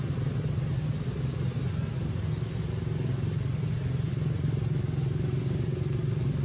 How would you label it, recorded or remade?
recorded